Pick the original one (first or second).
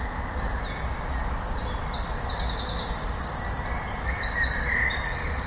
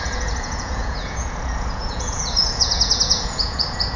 first